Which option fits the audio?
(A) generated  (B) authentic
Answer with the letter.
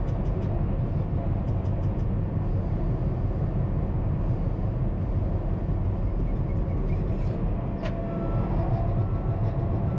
B